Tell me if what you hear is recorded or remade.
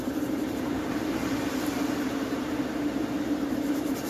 remade